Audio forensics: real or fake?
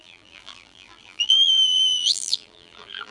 fake